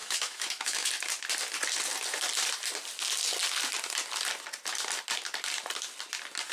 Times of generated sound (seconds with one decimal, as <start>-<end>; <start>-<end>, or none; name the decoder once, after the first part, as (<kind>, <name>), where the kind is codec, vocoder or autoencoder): 0.0-0.9 (autoencoder, DAC-VAE)